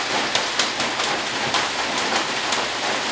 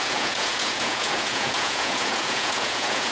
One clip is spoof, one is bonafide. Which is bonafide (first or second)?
first